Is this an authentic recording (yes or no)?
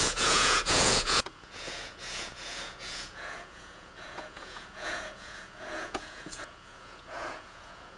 no